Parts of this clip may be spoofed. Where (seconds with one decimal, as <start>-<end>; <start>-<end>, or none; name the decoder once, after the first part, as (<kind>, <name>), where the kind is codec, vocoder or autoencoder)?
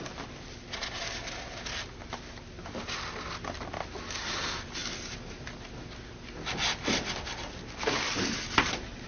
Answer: none